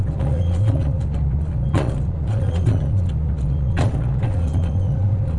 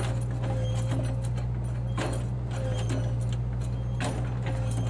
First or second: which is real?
second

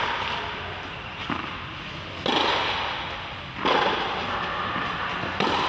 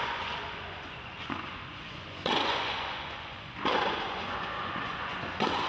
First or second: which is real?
first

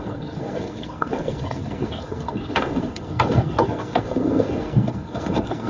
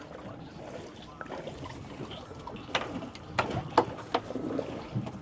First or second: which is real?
second